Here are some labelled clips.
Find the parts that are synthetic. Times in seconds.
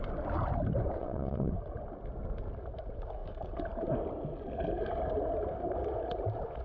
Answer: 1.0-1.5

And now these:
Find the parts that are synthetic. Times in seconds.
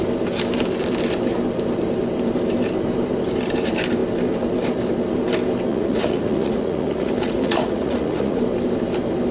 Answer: 5.7-8.4